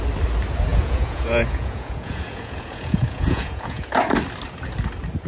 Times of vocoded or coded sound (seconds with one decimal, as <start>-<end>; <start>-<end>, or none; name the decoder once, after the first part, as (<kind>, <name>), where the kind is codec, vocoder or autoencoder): 0.7-3.9 (vocoder, Vocos)